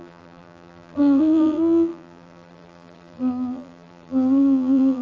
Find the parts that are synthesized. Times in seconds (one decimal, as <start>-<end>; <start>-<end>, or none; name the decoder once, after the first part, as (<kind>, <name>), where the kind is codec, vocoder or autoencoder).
0.0-5.0 (vocoder, BigVGAN v2)